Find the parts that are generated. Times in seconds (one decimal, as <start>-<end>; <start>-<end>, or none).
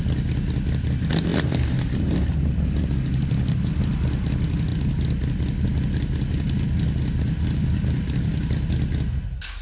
1.3-3.8